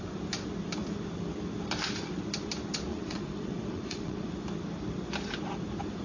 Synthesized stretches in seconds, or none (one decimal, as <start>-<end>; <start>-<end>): 2.9-4.3